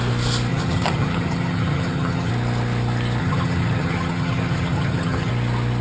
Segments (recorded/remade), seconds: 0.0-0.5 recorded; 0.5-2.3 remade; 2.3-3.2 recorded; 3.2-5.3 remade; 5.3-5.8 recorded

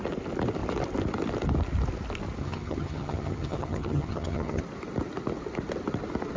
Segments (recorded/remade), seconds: 0.0-2.4 recorded; 2.4-4.6 remade; 4.6-6.4 recorded

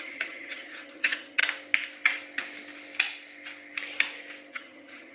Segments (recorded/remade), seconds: 0.0-1.4 remade; 1.4-4.5 recorded; 4.5-5.1 remade

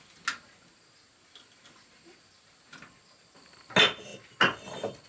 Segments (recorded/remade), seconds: 0.0-5.1 recorded